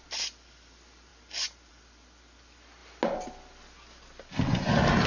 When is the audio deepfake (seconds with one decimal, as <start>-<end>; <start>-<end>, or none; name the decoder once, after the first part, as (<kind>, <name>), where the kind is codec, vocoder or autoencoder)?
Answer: none